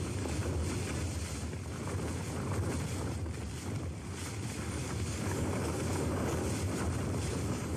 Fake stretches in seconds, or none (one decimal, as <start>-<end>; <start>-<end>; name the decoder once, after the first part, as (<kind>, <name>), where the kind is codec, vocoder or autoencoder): 0.0-0.4 (codec, DAC); 4.6-6.4; 7.3-7.8